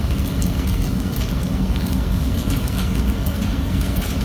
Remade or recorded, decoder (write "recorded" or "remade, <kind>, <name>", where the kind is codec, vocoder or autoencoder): remade, codec, SNAC